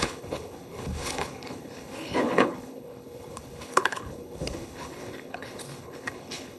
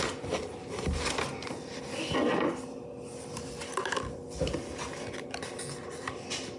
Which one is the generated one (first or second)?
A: first